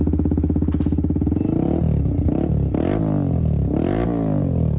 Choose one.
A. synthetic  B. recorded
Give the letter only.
B